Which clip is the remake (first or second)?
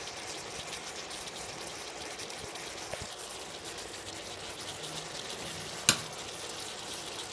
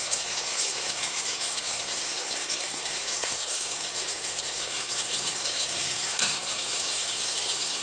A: second